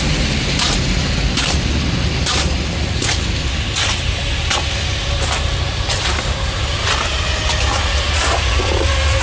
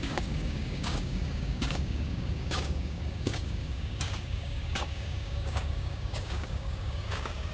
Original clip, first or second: first